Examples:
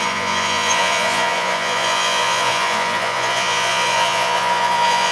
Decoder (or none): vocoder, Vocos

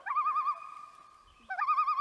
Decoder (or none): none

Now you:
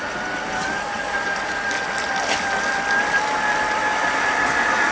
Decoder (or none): none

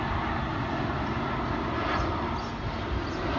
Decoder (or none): none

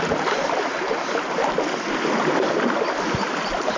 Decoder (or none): none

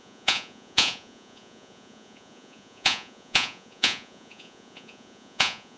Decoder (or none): vocoder, Vocos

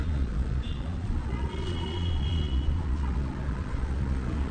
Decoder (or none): vocoder, Vocos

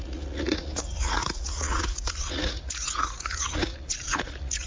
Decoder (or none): vocoder, Vocos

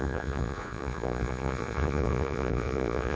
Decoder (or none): vocoder, Vocos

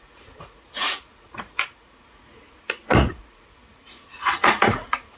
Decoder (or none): vocoder, Vocos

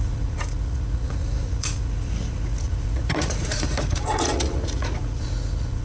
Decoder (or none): vocoder, Vocos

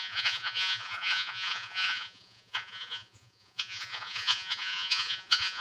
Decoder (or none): vocoder, Vocos